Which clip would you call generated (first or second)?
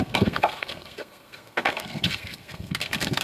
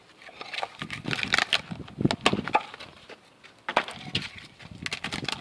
first